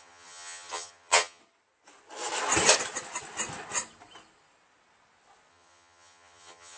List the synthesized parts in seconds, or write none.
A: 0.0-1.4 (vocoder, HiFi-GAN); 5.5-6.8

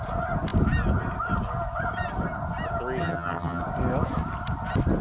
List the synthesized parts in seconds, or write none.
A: 3.0-3.6 (vocoder, HiFi-GAN)

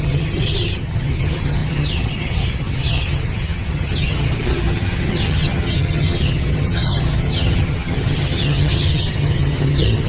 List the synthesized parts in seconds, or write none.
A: 0.0-10.1 (vocoder, HiFi-GAN)

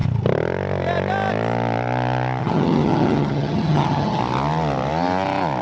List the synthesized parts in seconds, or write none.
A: 2.4-4.2 (vocoder, HiFi-GAN)

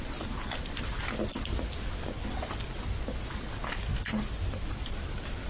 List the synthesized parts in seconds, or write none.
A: none

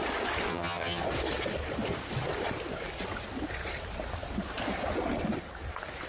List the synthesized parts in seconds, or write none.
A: 0.5-1.0 (vocoder, HiFi-GAN)